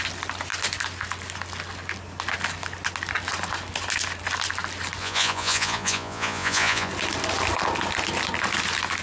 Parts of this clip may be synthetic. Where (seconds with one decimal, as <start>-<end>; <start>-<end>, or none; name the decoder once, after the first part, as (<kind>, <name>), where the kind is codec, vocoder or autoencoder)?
5.0-6.9 (vocoder, Vocos)